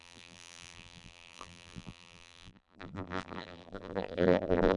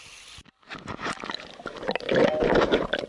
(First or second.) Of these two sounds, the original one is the second